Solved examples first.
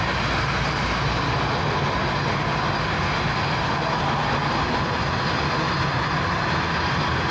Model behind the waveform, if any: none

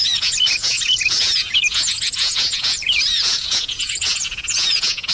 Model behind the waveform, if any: vocoder, Vocos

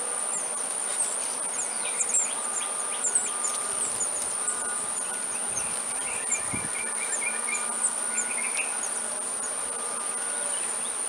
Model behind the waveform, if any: none